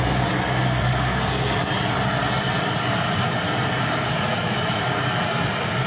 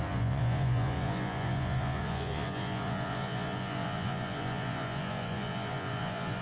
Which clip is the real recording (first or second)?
first